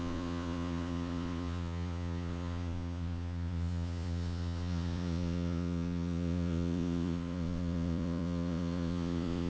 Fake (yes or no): yes